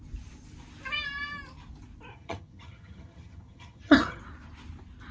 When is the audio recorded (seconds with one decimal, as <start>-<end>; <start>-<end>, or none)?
0.0-2.1; 4.2-5.1